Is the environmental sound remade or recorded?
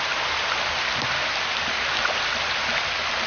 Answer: recorded